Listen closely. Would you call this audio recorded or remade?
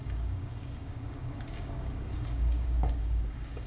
remade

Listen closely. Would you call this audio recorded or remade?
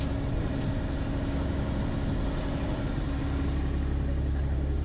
recorded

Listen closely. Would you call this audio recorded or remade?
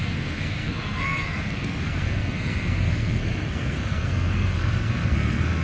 remade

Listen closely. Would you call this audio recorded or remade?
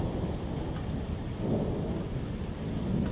recorded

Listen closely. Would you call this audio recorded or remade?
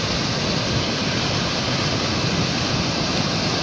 recorded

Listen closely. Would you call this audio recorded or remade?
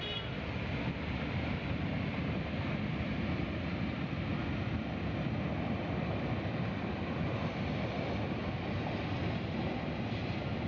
recorded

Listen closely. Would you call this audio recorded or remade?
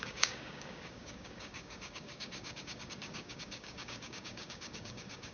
remade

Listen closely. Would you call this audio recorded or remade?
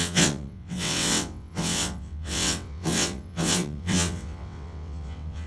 remade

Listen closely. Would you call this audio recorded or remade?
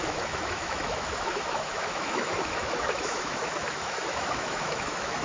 remade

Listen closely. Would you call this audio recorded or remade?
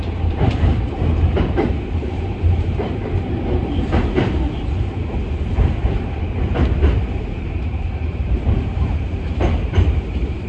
remade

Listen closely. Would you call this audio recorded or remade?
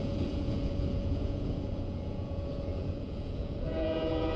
remade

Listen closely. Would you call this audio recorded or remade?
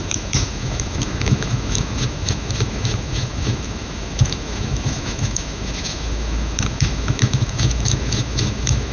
remade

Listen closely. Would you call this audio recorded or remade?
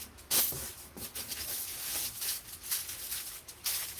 remade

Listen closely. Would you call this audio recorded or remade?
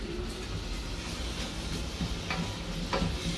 recorded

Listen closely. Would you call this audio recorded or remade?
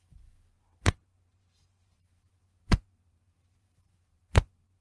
remade